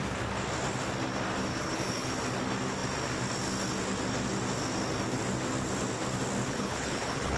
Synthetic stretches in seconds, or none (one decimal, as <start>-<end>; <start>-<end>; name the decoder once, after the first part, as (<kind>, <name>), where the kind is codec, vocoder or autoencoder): 1.5-2.1 (codec, HILCodec); 6.4-7.4